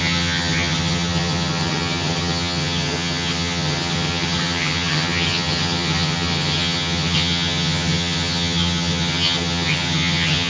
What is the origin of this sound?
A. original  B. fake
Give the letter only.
B